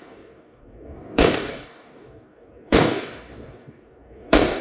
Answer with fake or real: fake